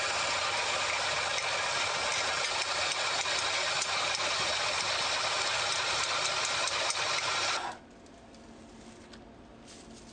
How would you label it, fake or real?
real